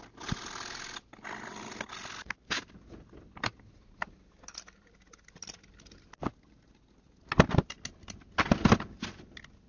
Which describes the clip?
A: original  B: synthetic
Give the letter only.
A